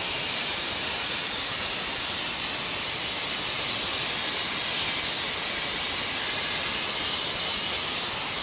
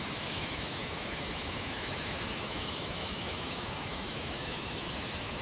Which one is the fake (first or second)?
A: second